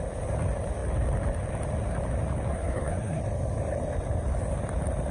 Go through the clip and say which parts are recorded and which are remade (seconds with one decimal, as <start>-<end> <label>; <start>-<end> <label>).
0.0-2.5 recorded; 2.5-3.2 remade; 3.2-5.1 recorded